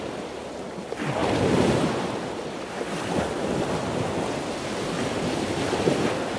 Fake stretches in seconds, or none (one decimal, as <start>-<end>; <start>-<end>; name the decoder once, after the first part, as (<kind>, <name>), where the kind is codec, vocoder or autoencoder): none